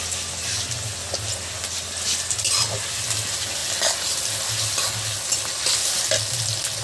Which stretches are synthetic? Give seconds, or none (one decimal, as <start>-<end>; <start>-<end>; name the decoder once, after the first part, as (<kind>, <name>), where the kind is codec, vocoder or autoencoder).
none